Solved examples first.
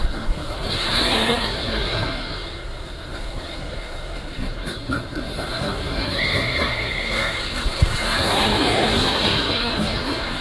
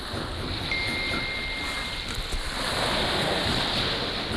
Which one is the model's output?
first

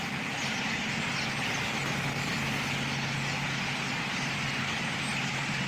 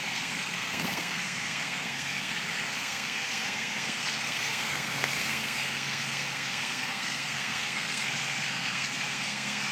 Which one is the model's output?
second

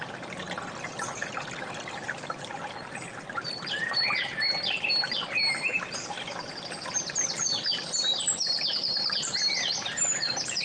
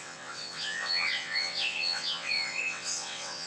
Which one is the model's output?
second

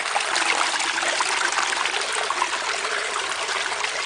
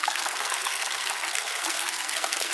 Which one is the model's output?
second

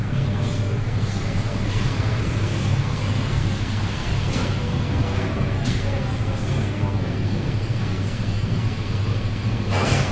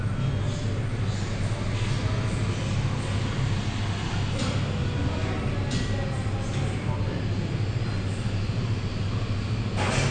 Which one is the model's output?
first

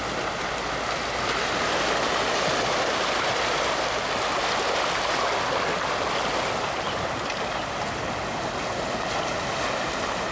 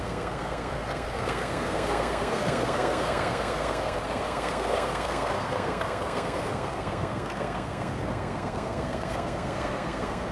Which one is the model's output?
second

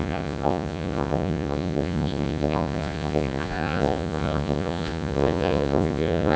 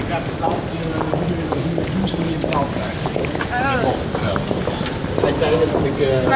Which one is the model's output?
first